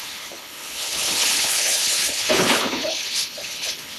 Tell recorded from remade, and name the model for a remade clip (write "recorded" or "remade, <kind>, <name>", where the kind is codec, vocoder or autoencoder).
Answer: remade, codec, HILCodec